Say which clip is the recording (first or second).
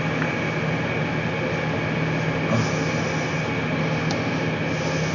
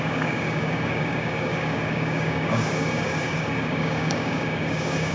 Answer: first